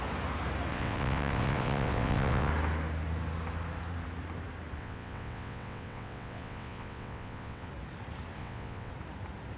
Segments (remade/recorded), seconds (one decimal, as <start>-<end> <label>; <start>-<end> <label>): 0.0-0.7 recorded; 0.7-2.5 remade; 2.5-4.8 recorded; 4.8-7.7 remade; 7.7-8.4 recorded; 8.4-8.9 remade; 8.9-9.6 recorded